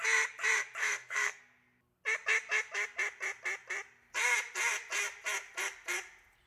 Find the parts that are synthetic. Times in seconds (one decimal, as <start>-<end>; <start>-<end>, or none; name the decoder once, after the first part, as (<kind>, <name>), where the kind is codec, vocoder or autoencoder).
0.8-1.4 (codec, SNAC)